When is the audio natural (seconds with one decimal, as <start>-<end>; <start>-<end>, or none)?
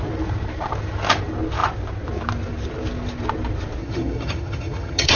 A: 0.0-3.8